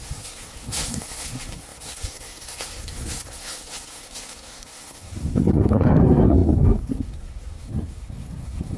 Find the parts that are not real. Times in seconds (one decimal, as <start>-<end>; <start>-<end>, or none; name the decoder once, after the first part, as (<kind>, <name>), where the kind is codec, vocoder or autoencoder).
0.0-8.8 (codec, SNAC)